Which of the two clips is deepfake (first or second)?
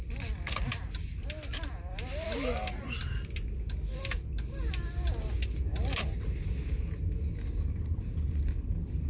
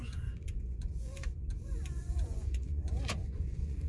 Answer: second